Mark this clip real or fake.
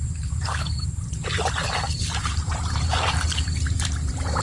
fake